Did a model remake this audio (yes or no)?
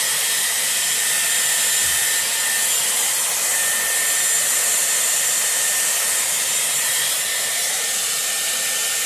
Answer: no